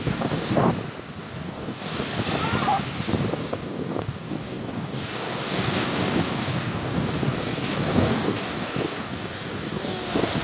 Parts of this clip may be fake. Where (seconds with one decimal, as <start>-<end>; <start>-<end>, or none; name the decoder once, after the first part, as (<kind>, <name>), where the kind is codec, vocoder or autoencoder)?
0.0-0.7 (codec, DAC); 1.2-2.1; 3.3-10.4

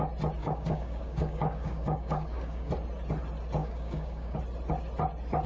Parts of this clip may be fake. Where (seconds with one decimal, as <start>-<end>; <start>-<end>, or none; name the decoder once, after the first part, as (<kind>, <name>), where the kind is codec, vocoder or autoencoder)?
0.4-2.7 (codec, DAC); 3.6-4.4

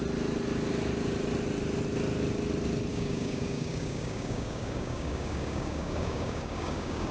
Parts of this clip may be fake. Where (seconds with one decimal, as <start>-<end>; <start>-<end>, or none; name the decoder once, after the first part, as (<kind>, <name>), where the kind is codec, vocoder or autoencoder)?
2.9-7.1 (codec, DAC)